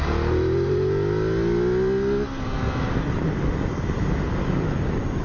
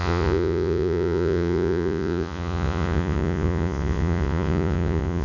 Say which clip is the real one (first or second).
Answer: first